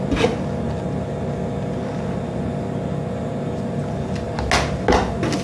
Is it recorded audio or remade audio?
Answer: recorded